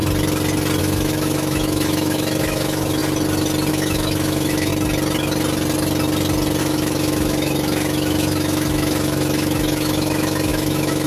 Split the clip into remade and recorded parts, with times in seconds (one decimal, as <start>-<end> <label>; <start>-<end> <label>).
0.0-0.8 recorded; 0.8-3.0 remade; 3.0-3.7 recorded; 3.7-4.7 remade; 4.7-6.6 recorded; 6.6-11.1 remade

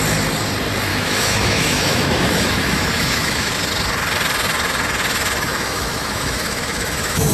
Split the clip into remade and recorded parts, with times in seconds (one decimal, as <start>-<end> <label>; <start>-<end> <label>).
0.0-0.9 recorded; 0.9-3.5 remade; 3.5-5.5 recorded; 5.5-7.3 remade